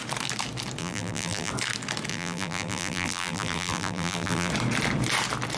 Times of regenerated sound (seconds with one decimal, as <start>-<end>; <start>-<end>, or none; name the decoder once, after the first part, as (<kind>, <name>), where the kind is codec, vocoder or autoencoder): 0.8-1.5 (vocoder, BigVGAN v2); 2.1-4.5